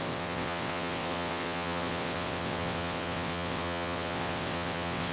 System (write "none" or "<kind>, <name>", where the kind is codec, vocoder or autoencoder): vocoder, WaveNeXt